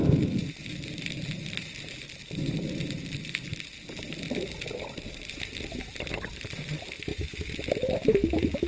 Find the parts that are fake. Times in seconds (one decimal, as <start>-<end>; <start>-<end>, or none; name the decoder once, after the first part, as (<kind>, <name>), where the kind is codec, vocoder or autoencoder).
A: 7.1-8.7 (autoencoder, DAC-VAE)